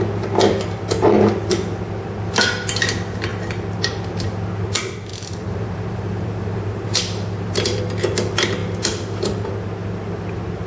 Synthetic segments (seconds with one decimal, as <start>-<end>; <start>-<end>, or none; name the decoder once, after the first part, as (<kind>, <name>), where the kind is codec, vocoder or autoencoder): 5.1-7.8 (vocoder, BigVGAN v2)